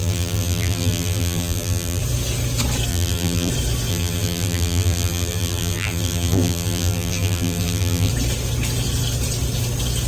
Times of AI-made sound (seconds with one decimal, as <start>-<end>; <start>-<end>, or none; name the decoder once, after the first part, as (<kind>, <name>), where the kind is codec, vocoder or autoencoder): 0.0-2.0 (vocoder, BigVGAN v2); 2.9-3.5; 3.9-8.1